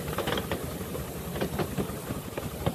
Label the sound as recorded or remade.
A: recorded